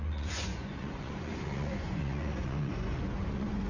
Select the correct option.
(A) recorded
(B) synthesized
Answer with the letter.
B